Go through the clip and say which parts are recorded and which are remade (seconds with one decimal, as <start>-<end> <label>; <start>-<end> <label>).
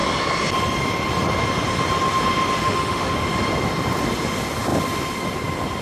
0.0-2.6 recorded; 2.6-3.1 remade; 3.1-5.8 recorded